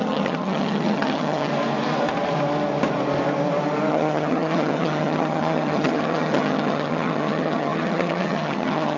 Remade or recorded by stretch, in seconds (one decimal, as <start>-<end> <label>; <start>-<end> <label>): 0.0-1.5 remade; 1.5-3.9 recorded; 3.9-9.0 remade